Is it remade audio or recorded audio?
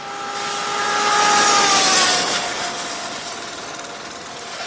recorded